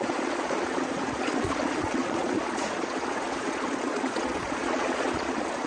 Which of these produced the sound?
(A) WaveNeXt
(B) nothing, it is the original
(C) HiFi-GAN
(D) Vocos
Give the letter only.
D